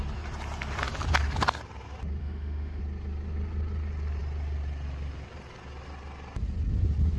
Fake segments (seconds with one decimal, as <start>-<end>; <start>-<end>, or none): 2.2-2.8